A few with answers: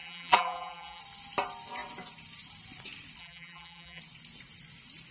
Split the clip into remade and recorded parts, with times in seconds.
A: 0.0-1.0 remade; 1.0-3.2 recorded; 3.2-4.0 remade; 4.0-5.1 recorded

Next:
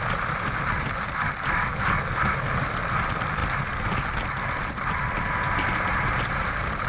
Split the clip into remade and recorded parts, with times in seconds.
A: 0.0-6.9 recorded

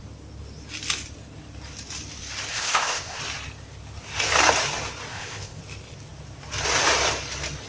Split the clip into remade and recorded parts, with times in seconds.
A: 0.0-2.5 recorded; 2.5-3.2 remade; 3.2-5.1 recorded; 5.1-5.6 remade; 5.6-7.7 recorded

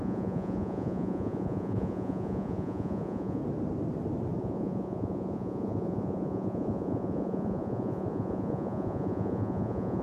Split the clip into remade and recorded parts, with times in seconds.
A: 0.0-3.4 remade; 3.4-4.4 recorded; 4.4-10.0 remade

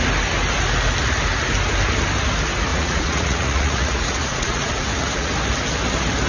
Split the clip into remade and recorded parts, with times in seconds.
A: 0.0-2.7 recorded; 2.7-5.3 remade; 5.3-6.3 recorded